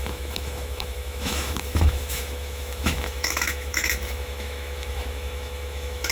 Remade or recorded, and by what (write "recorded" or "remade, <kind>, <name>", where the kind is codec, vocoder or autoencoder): remade, autoencoder, DAC-VAE